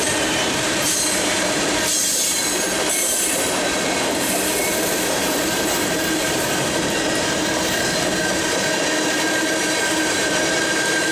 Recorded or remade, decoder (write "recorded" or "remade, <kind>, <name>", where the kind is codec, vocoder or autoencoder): remade, vocoder, BigVGAN v2